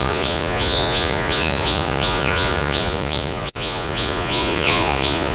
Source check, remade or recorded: remade